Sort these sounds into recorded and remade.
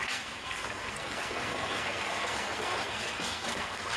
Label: remade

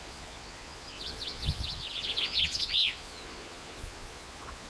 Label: remade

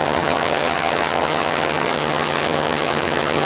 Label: remade